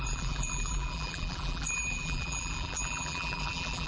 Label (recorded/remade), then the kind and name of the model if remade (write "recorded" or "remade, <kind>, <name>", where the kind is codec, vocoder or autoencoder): remade, vocoder, BigVGAN v2